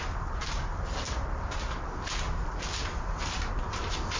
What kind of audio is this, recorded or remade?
recorded